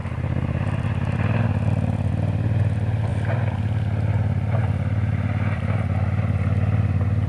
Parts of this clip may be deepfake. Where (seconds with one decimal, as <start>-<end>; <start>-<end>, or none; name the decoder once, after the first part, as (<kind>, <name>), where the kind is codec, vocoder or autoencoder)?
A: none